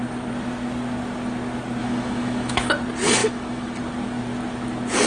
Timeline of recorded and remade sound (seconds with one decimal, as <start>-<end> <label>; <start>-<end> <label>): 0.0-1.8 recorded; 1.8-2.7 remade; 2.7-3.2 recorded; 3.2-3.8 remade; 3.8-5.1 recorded